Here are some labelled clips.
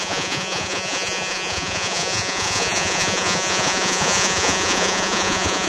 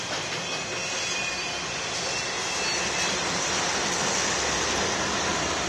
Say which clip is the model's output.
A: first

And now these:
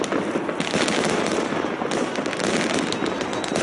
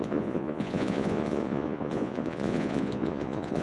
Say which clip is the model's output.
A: second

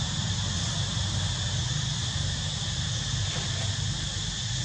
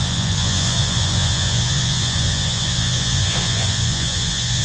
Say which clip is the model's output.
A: second